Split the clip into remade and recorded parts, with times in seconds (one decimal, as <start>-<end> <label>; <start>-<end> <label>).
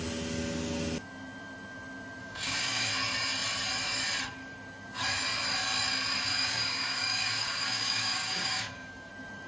0.0-2.2 recorded; 2.2-2.9 remade; 2.9-6.3 recorded; 6.3-9.1 remade; 9.1-9.5 recorded